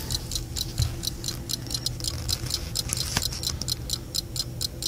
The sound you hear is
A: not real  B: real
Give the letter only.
B